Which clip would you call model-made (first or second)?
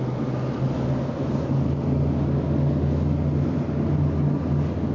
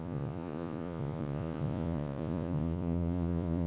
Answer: second